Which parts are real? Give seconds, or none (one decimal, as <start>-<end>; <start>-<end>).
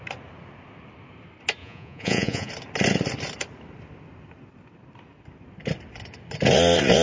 0.0-1.6; 2.5-7.0